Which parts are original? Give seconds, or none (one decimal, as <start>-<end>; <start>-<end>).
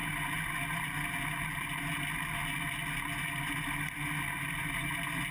0.0-5.3